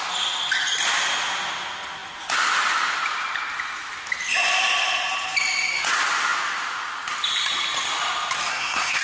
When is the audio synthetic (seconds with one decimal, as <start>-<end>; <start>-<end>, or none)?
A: 8.5-9.0